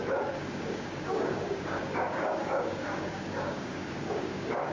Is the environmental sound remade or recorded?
remade